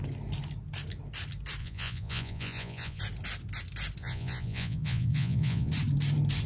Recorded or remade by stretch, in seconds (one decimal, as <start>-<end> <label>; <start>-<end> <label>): 0.0-1.6 recorded; 1.6-3.0 remade; 3.0-4.0 recorded; 4.0-5.7 remade; 5.7-6.5 recorded